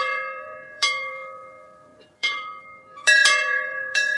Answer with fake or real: fake